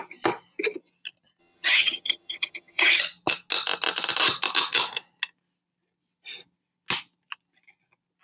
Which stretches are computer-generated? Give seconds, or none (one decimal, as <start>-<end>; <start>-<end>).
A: 1.4-3.0